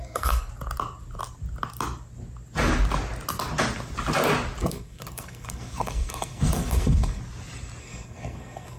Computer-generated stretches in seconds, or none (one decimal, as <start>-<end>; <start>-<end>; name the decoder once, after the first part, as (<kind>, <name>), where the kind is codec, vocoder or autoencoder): 0.0-0.5 (codec, SNAC); 4.6-7.2; 7.8-8.8